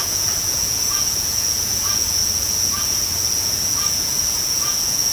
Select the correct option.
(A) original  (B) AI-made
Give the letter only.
B